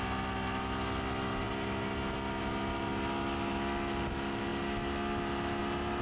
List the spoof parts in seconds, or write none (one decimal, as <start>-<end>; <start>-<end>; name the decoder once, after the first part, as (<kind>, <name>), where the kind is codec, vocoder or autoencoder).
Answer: none